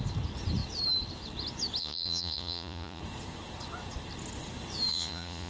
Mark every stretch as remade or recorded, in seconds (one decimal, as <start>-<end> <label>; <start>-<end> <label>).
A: 0.0-1.8 recorded; 1.8-3.0 remade; 3.0-4.9 recorded; 4.9-5.5 remade